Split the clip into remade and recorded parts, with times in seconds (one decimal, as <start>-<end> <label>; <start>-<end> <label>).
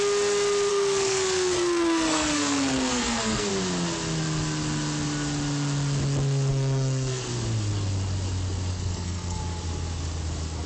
0.0-0.7 recorded; 0.7-3.5 remade; 3.5-6.5 recorded; 6.5-7.3 remade; 7.3-8.7 recorded; 8.7-9.4 remade; 9.4-10.7 recorded